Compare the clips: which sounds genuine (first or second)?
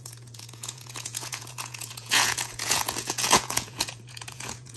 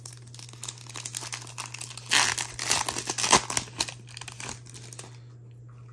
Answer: second